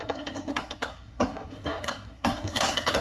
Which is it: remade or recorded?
remade